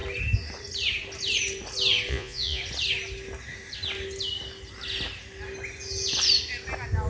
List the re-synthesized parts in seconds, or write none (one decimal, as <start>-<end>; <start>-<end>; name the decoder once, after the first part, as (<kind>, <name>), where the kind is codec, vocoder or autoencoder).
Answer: 2.1-2.6 (vocoder, Vocos)